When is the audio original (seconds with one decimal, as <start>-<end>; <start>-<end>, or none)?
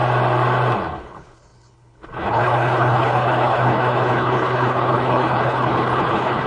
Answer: 0.0-1.0